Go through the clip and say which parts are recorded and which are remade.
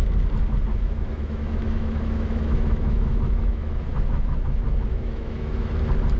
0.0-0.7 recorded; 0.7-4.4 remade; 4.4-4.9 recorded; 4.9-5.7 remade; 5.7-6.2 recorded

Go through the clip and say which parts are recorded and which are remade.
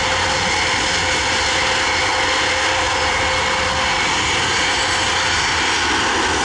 0.0-6.4 recorded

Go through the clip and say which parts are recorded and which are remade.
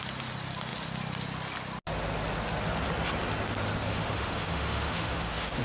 0.0-3.9 recorded; 3.9-5.6 remade